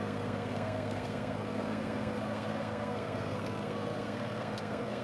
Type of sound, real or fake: fake